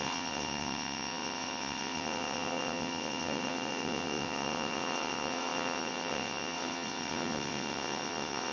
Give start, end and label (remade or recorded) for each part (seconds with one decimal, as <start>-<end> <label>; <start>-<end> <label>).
0.0-8.5 remade